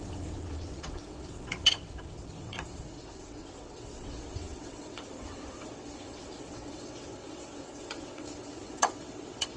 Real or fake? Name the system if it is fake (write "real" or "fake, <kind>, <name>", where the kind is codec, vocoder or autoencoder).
fake, vocoder, WaveNeXt